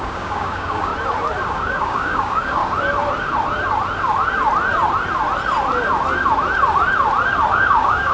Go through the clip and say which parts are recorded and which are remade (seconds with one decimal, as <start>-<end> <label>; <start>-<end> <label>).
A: 0.0-0.9 remade; 0.9-1.5 recorded; 1.5-2.6 remade; 2.6-7.5 recorded; 7.5-8.1 remade

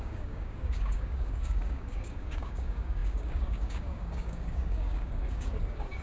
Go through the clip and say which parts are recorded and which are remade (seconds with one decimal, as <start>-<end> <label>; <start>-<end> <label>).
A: 0.0-6.0 remade

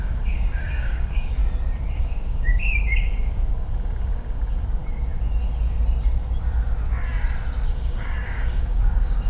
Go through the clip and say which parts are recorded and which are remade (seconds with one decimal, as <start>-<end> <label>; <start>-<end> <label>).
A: 0.0-1.4 remade; 1.4-2.0 recorded; 2.0-4.8 remade; 4.8-7.7 recorded; 7.7-9.3 remade

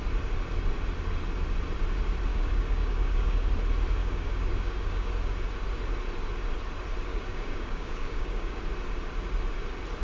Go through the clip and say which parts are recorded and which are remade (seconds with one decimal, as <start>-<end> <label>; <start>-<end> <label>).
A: 0.0-2.3 recorded; 2.3-3.5 remade; 3.5-4.0 recorded; 4.0-5.1 remade; 5.1-7.1 recorded; 7.1-8.6 remade; 8.6-10.0 recorded

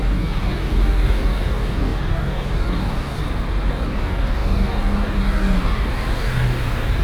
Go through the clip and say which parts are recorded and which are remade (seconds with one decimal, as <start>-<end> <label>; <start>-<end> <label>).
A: 0.0-3.2 remade; 3.2-3.7 recorded; 3.7-7.0 remade